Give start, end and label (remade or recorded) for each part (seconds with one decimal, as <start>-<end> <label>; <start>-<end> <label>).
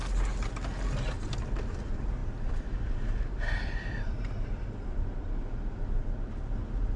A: 0.0-2.2 recorded; 2.2-5.8 remade; 5.8-7.0 recorded